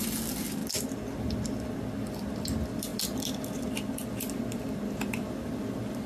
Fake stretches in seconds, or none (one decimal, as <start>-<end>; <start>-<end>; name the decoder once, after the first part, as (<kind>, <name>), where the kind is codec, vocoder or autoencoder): none